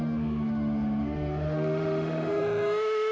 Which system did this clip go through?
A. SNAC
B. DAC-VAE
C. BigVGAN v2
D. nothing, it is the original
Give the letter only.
B